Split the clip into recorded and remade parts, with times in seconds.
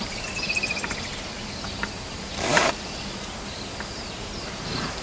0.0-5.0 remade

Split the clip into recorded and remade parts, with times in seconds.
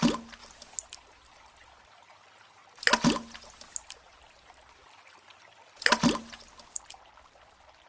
0.0-7.9 recorded